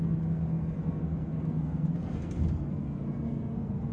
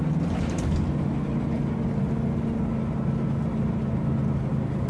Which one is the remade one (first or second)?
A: first